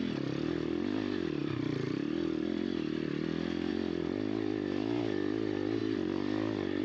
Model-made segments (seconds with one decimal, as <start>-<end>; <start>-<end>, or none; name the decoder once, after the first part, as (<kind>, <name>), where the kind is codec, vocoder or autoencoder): none